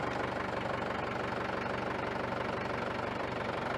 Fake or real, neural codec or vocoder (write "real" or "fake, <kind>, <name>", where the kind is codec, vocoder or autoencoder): real